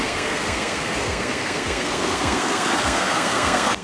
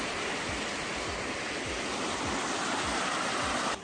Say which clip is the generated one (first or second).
first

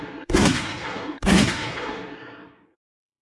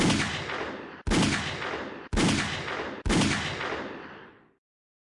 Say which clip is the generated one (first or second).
first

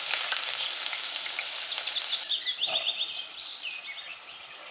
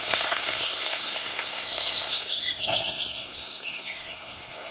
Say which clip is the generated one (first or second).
second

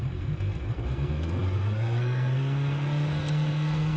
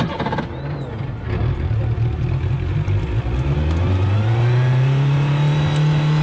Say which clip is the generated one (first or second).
first